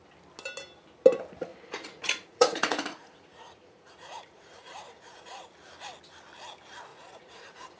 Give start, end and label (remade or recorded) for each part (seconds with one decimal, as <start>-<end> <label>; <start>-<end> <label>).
0.0-1.5 recorded; 1.5-5.5 remade; 5.5-6.9 recorded; 6.9-7.8 remade